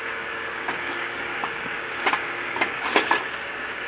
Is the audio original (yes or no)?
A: no